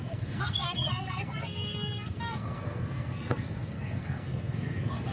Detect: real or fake fake